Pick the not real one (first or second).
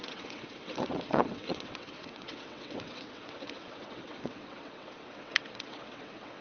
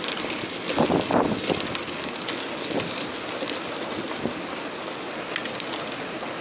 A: first